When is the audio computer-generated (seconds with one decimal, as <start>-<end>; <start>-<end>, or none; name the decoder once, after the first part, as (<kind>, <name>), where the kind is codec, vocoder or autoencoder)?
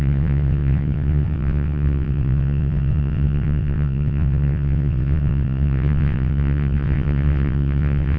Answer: 0.0-8.2 (vocoder, WaveNeXt)